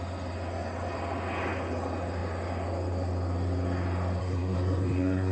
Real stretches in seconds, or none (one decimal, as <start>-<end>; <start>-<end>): 0.0-4.2

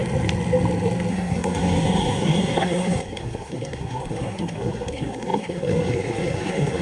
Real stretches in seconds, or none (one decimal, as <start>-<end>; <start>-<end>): 0.0-1.1

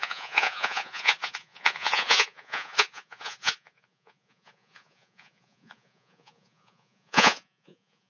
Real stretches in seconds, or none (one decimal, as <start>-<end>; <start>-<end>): none

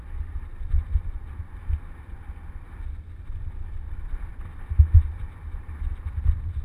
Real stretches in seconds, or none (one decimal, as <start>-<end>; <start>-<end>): 0.0-6.6

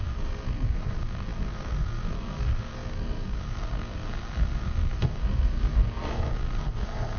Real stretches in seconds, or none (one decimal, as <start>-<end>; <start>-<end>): none

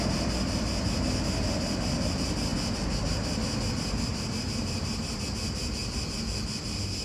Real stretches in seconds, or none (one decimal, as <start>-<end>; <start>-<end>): 0.0-7.0

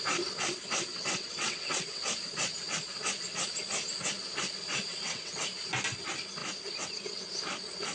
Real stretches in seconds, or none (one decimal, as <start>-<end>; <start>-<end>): 0.0-0.9; 2.0-4.9; 5.4-7.9